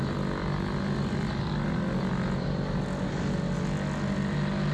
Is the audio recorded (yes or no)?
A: yes